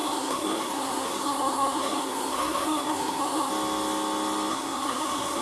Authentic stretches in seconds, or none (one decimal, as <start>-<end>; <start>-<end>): 3.5-4.5